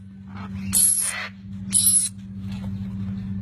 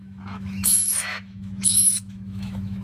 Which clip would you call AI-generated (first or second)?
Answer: second